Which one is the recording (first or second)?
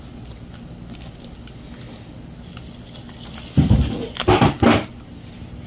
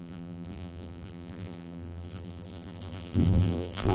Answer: first